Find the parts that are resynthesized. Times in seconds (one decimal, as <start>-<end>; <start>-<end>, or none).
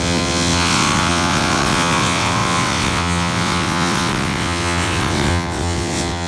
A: 0.0-6.3